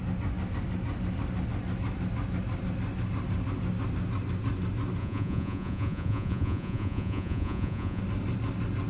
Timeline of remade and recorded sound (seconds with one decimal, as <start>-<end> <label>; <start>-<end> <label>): 0.0-5.0 recorded; 5.0-8.0 remade; 8.0-8.9 recorded